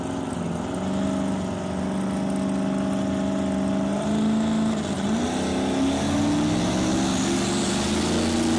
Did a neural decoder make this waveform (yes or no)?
no